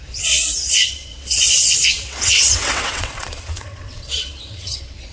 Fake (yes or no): yes